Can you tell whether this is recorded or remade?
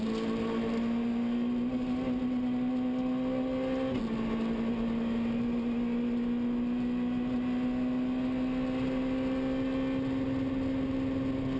recorded